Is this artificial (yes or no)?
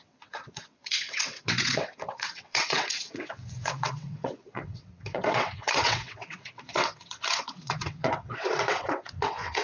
yes